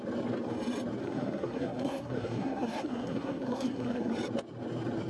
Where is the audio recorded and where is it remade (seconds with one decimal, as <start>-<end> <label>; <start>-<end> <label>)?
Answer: 0.0-1.0 recorded; 1.0-4.1 remade; 4.1-5.1 recorded